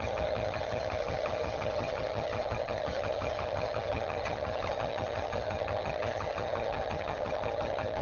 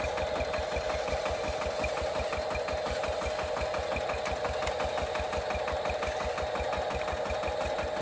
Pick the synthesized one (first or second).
first